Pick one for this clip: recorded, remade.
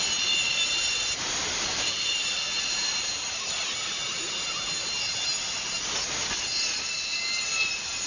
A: recorded